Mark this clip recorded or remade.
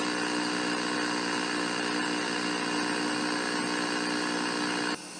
recorded